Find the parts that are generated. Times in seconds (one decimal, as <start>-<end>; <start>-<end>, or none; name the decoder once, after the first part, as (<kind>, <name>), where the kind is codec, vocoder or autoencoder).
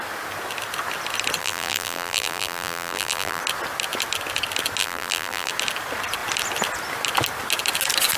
1.4-3.4 (vocoder, BigVGAN v2); 4.8-5.5